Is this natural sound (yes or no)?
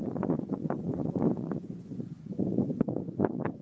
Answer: no